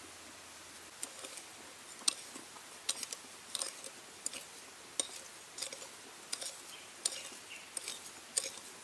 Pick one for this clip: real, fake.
real